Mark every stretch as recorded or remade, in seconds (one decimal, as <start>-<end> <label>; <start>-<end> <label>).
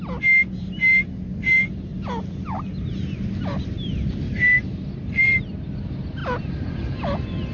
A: 0.0-7.5 recorded